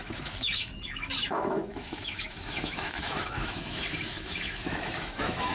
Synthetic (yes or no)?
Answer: yes